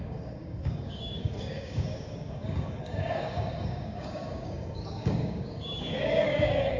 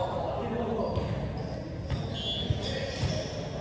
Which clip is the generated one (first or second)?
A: first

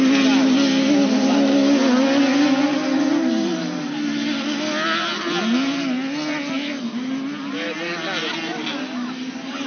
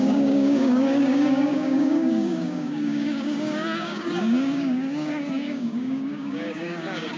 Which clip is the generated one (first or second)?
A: second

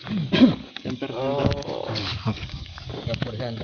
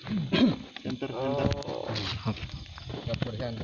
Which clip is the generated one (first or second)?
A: first